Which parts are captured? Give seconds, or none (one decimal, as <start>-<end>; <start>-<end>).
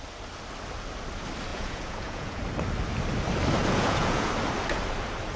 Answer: 0.0-1.5; 2.4-3.6; 4.3-5.4